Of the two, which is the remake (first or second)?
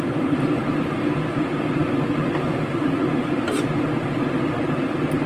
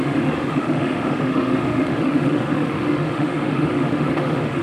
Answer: second